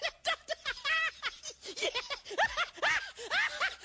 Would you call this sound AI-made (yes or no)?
no